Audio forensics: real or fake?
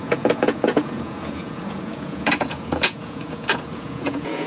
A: fake